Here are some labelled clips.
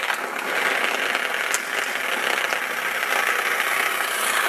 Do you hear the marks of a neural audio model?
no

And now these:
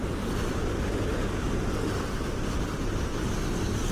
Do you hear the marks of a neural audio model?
no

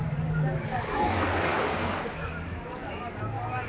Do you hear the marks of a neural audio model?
yes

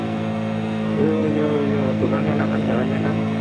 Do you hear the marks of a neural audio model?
yes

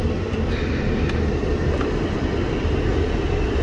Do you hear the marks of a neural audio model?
yes